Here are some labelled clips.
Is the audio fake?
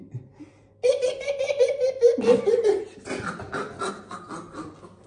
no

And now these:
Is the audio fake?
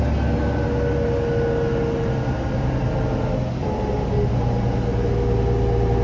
no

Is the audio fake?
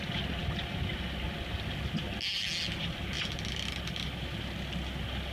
no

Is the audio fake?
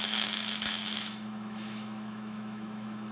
yes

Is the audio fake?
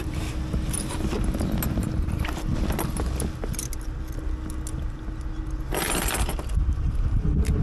no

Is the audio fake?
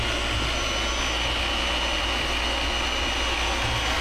no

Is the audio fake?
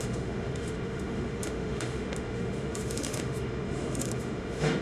yes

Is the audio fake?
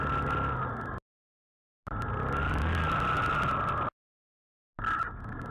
no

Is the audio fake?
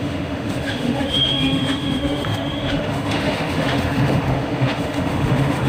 yes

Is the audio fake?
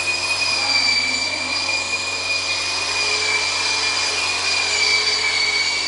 no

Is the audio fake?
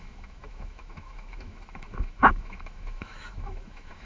yes